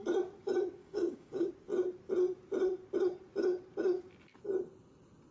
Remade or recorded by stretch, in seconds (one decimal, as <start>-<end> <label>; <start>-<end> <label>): 0.0-0.8 recorded; 0.8-1.5 remade; 1.5-5.3 recorded